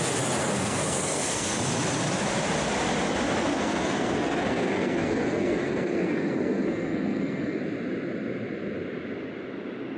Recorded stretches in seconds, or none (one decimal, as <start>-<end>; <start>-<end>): 0.0-0.4; 1.6-3.5; 7.6-10.0